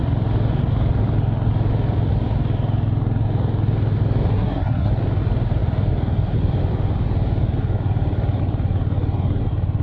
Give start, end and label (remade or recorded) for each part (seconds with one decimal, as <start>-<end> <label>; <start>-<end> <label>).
0.0-4.3 recorded; 4.3-4.9 remade; 4.9-9.8 recorded